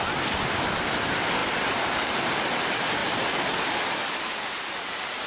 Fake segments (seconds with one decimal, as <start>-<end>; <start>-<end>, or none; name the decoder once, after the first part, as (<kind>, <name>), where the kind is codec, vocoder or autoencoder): none